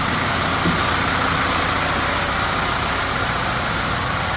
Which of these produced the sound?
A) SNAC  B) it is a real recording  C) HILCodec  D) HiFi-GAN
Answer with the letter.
B